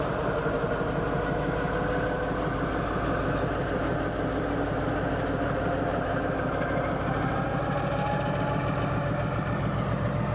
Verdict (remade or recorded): recorded